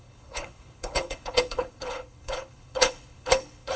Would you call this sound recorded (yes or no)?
no